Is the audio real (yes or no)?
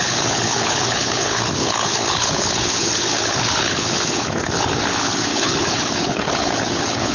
no